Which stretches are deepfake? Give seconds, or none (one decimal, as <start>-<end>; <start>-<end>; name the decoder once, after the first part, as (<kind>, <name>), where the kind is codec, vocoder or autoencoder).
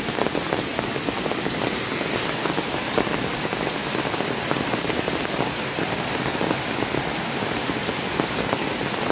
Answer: 3.8-6.2 (vocoder, BigVGAN v2)